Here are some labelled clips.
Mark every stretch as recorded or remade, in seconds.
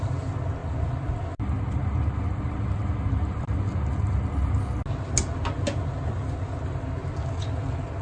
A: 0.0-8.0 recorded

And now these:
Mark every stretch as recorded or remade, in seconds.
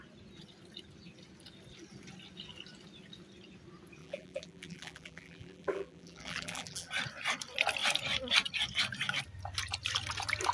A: 0.0-4.0 recorded; 4.0-6.9 remade; 6.9-10.5 recorded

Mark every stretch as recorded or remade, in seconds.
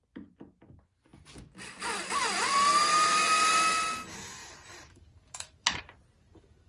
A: 0.0-2.7 recorded; 2.7-3.4 remade; 3.4-4.4 recorded; 4.4-5.8 remade; 5.8-6.7 recorded